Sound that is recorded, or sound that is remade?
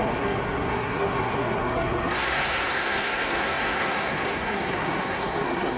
remade